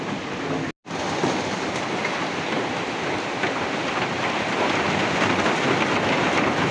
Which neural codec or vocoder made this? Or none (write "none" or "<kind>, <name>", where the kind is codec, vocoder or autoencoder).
none